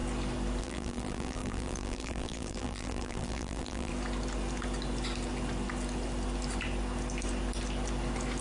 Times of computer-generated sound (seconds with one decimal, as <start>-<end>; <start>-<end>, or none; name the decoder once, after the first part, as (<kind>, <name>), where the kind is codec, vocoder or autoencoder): 0.6-3.9 (vocoder, BigVGAN v2)